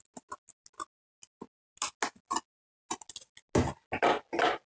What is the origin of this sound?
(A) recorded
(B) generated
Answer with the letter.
A